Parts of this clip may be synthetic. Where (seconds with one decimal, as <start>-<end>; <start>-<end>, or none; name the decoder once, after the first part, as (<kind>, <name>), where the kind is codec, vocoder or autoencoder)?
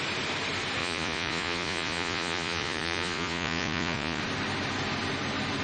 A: 0.8-4.2 (vocoder, Vocos)